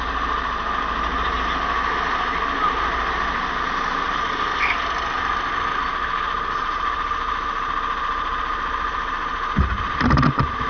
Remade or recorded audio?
recorded